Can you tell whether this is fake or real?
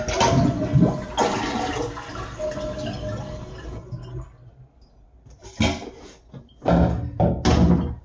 real